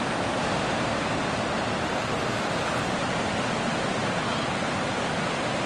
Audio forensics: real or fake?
real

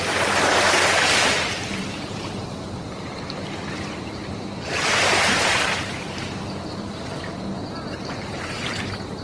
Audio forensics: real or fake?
fake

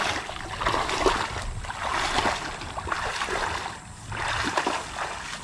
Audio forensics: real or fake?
real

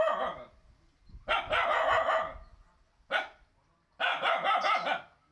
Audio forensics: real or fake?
real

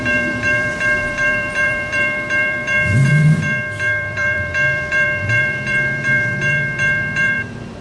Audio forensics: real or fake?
fake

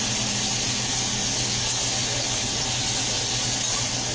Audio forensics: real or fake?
real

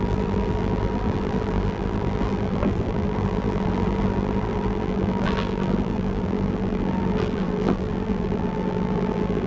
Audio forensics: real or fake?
fake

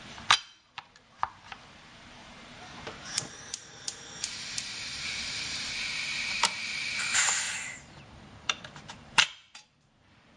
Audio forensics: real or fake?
fake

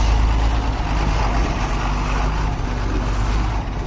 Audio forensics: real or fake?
real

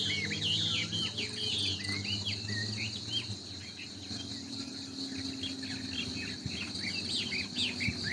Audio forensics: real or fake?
real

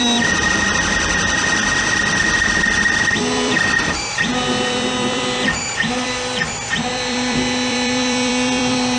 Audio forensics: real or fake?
fake